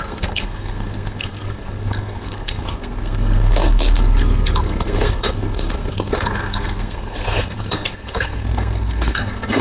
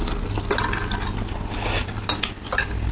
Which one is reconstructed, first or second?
first